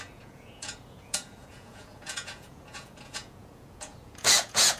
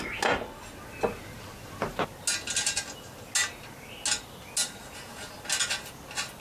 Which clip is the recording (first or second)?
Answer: second